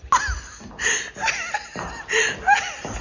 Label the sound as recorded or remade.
recorded